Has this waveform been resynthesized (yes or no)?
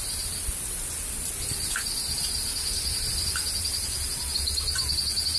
no